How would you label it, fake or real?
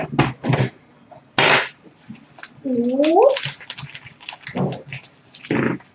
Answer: real